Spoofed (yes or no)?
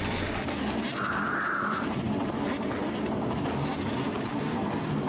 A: no